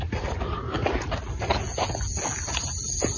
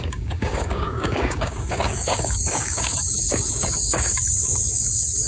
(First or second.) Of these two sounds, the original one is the first